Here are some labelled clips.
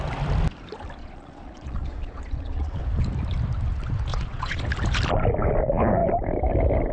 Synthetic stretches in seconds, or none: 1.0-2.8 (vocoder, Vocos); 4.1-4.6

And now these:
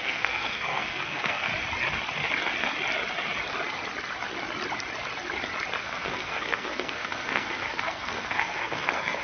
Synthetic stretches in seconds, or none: 0.0-1.5 (codec, SNAC); 5.8-9.2

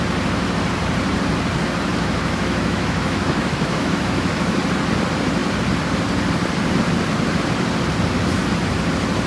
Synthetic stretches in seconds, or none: 1.9-4.6 (autoencoder, DAC-VAE)